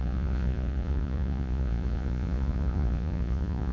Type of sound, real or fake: fake